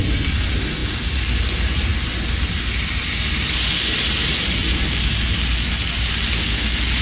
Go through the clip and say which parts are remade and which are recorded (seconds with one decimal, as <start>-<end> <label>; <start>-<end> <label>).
0.0-7.0 recorded